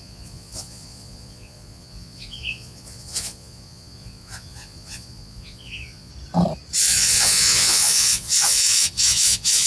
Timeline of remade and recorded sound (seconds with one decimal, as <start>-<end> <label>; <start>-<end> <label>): 0.0-6.1 remade; 6.1-6.8 recorded; 6.8-9.7 remade